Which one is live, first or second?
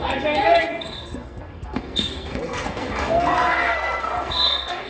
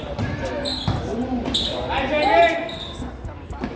second